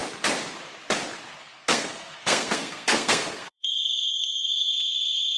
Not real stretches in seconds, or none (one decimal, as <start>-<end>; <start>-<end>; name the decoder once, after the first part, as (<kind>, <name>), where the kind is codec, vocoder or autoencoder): 1.5-4.7 (codec, SNAC)

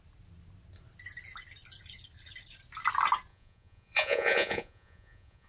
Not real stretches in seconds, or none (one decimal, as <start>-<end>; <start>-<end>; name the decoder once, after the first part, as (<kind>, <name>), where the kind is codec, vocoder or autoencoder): 3.3-5.5 (vocoder, Vocos)